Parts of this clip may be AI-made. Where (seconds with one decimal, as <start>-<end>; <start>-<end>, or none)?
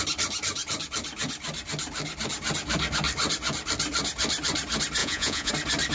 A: 5.0-5.5